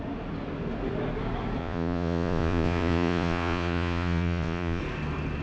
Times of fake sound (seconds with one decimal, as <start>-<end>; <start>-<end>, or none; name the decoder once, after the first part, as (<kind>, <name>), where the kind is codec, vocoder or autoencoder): 1.6-4.8 (vocoder, Vocos)